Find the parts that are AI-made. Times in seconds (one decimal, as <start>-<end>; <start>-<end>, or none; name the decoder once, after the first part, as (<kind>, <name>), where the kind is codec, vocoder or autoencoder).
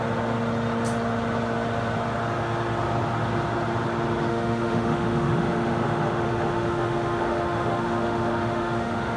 4.3-9.2 (autoencoder, DAC-VAE)